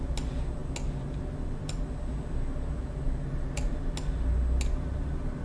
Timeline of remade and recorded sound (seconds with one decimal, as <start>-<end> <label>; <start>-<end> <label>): 0.0-5.4 recorded